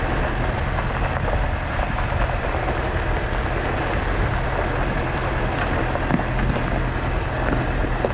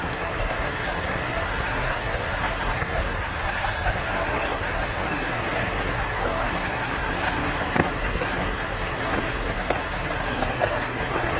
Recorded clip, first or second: first